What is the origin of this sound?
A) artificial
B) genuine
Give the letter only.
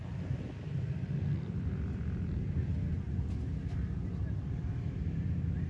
B